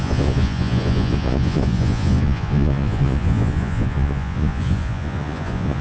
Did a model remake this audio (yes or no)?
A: yes